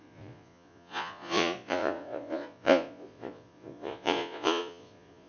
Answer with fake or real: fake